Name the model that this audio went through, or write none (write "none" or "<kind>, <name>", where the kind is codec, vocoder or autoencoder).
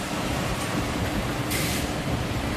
vocoder, BigVGAN v2